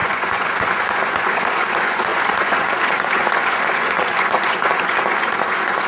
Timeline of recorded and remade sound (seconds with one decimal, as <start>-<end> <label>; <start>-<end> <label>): 0.0-5.9 remade